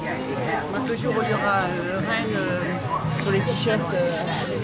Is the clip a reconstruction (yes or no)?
no